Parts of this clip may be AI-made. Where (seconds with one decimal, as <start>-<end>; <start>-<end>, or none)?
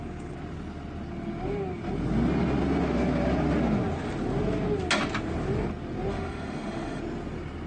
6.1-7.0